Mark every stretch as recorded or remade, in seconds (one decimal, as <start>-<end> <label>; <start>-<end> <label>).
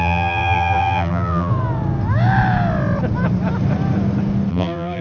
0.0-1.5 remade; 1.5-4.5 recorded; 4.5-5.0 remade